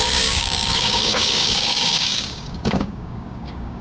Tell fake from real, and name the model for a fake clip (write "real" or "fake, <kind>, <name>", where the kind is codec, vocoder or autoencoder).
fake, codec, DAC